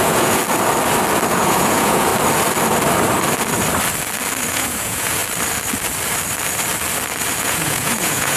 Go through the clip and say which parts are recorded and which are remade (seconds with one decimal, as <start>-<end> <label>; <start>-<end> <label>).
0.0-0.4 remade; 0.4-1.3 recorded; 1.3-2.1 remade; 2.1-4.5 recorded; 4.5-5.2 remade; 5.2-7.4 recorded; 7.4-8.4 remade